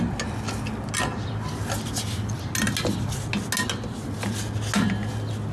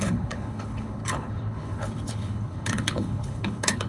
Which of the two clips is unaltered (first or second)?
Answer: first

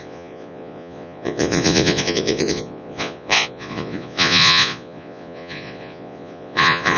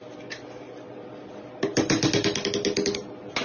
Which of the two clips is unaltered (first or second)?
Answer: second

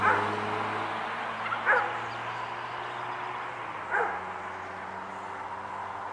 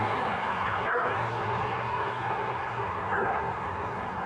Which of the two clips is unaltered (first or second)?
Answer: first